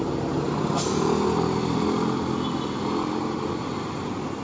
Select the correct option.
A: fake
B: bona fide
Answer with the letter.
B